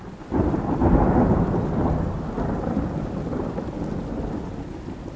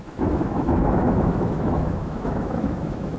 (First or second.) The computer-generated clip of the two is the second